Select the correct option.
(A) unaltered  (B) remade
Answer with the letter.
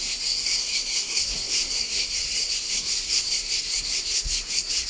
B